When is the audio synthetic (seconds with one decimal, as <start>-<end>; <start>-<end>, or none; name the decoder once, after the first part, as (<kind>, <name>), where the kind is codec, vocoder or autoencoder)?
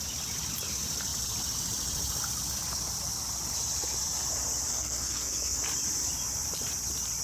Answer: 4.7-5.6 (codec, SNAC)